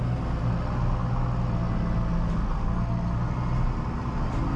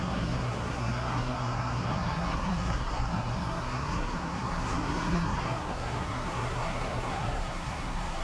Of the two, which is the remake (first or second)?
second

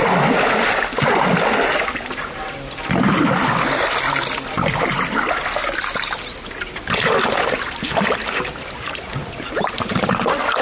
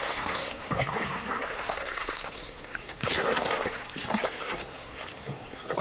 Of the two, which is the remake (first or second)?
second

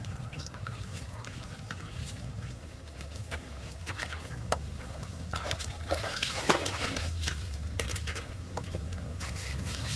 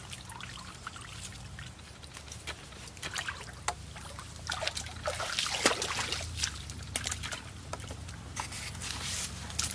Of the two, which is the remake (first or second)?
first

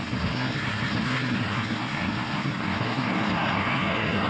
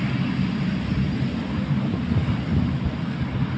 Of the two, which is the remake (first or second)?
first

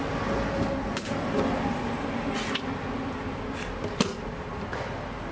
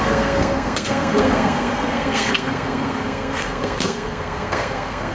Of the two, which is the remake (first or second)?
second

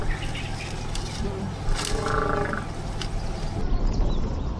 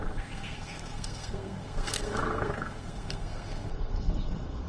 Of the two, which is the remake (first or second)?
second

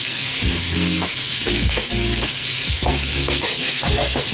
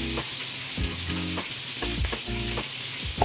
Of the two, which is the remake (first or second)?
first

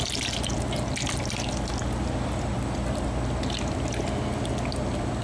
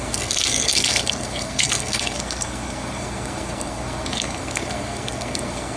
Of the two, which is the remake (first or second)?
second